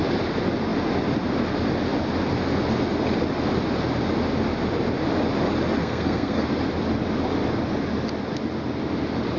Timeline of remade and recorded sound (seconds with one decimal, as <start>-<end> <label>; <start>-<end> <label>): 0.0-5.8 recorded; 5.8-6.5 remade; 6.5-9.4 recorded